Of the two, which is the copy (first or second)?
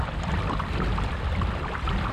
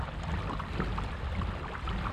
first